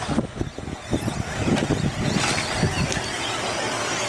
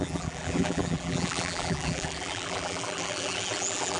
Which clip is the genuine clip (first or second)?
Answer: first